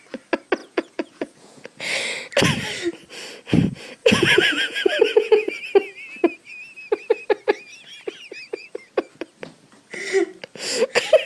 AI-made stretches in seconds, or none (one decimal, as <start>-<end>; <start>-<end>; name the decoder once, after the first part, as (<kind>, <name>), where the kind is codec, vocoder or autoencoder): 0.6-1.8 (vocoder, Vocos); 4.0-5.6